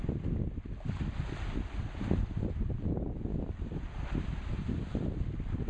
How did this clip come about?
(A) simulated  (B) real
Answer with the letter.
B